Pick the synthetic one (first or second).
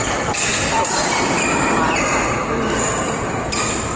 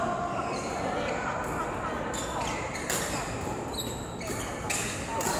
first